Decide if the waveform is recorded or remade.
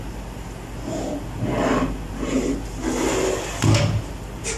recorded